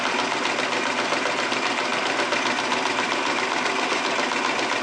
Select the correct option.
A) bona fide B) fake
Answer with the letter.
A